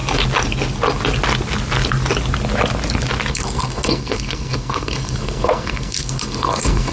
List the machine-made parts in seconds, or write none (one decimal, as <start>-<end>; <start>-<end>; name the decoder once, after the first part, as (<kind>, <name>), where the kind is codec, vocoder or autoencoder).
3.3-6.9 (codec, SNAC)